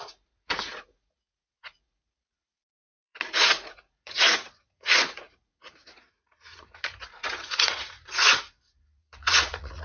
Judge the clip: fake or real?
fake